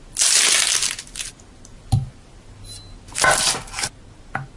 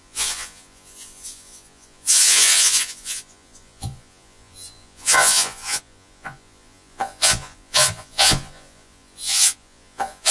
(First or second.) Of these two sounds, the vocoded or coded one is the second